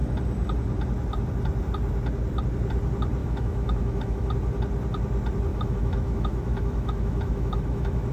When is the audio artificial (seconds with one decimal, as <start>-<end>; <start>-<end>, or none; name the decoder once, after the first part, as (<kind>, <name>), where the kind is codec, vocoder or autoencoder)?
3.2-4.3 (autoencoder, DAC-VAE); 5.5-8.1